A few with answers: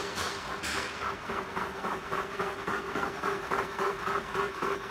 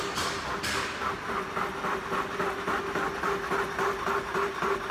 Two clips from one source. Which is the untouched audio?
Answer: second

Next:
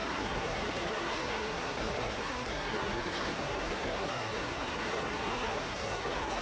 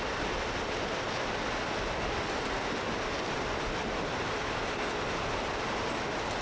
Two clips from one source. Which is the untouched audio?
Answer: second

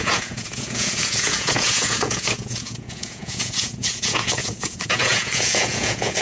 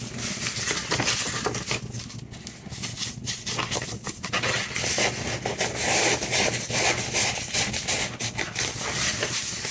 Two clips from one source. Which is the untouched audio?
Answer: second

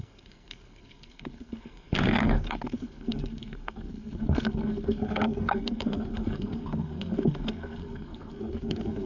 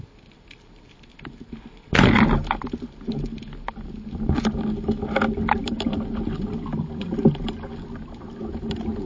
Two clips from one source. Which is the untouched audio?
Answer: second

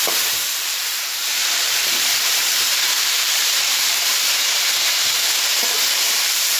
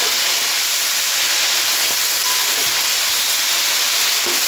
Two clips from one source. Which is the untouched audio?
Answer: second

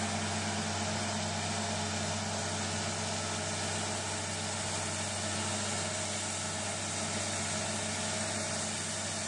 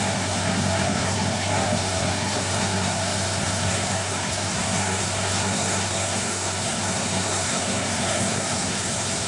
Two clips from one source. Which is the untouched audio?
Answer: first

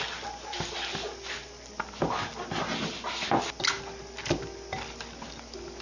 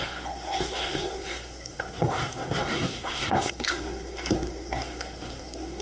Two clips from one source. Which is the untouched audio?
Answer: first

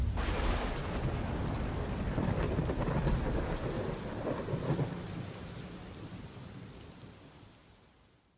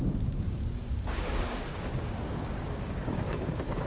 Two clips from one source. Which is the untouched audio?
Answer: first